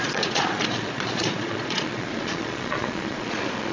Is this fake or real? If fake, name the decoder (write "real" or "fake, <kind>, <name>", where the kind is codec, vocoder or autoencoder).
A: fake, vocoder, Vocos